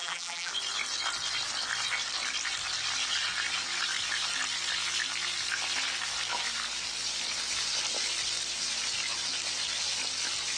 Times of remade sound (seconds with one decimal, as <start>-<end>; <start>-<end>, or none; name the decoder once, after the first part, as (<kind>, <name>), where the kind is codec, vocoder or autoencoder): 0.0-0.5 (vocoder, BigVGAN v2)